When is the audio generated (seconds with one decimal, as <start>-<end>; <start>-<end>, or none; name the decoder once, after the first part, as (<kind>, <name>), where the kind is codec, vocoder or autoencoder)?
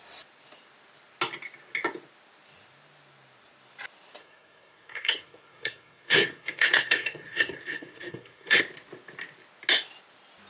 4.2-8.6 (codec, SNAC)